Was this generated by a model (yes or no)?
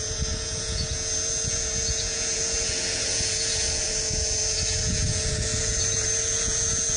yes